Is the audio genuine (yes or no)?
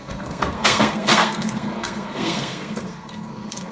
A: no